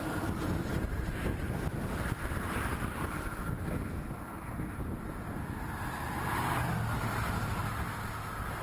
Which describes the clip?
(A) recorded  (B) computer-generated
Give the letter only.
A